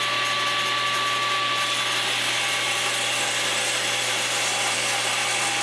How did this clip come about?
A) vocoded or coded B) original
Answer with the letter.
B